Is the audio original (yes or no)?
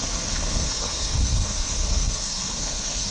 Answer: no